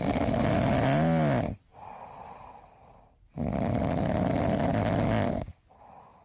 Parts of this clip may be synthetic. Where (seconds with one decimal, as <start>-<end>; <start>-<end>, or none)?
none